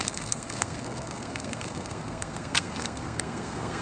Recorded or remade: remade